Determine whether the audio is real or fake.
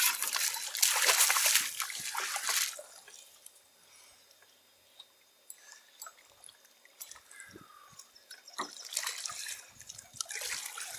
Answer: real